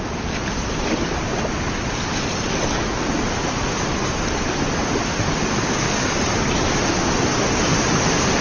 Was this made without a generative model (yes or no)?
yes